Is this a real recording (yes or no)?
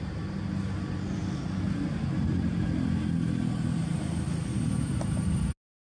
yes